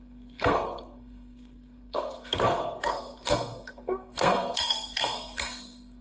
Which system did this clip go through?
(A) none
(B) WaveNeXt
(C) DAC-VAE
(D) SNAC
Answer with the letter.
D